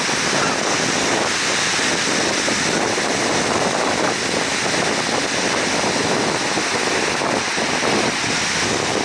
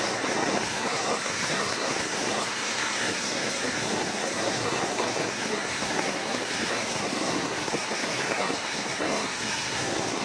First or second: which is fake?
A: second